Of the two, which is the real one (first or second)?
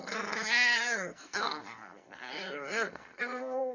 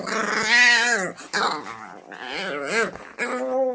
second